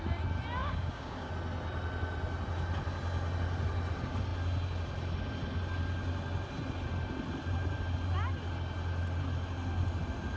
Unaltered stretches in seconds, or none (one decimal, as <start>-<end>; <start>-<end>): 0.0-0.6; 1.3-10.4